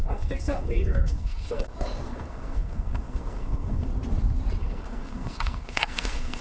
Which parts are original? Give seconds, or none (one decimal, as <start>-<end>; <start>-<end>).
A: 3.9-4.6